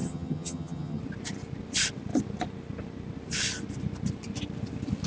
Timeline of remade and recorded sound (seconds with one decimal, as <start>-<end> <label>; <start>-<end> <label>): 0.0-1.0 remade; 1.0-5.1 recorded